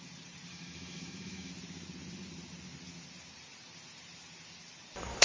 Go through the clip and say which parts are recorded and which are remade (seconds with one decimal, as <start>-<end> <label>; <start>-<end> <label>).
0.0-0.5 recorded; 0.5-1.5 remade; 1.5-5.2 recorded